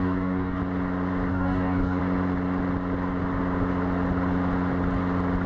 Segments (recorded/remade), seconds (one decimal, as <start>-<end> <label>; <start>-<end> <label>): 0.0-0.6 remade; 0.6-1.3 recorded; 1.3-2.0 remade; 2.0-5.5 recorded